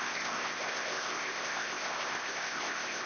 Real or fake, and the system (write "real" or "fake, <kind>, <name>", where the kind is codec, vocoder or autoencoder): fake, codec, ZipCodec